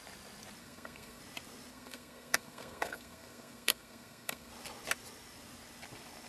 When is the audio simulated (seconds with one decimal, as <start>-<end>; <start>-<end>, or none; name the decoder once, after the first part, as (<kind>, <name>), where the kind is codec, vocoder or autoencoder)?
0.6-1.2 (codec, SNAC); 1.7-4.5